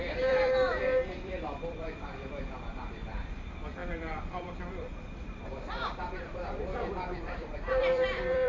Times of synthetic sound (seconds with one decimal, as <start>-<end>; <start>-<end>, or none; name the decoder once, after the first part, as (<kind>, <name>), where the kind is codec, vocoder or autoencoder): 0.0-8.5 (vocoder, BigVGAN v2)